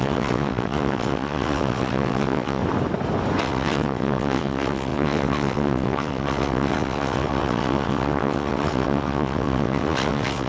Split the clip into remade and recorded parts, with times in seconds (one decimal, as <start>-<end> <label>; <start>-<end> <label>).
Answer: 0.0-2.6 remade; 2.6-3.4 recorded; 3.4-10.5 remade